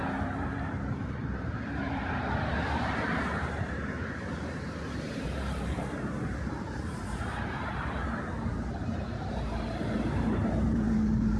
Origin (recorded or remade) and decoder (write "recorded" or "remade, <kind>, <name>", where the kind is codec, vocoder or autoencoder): remade, vocoder, BigVGAN v2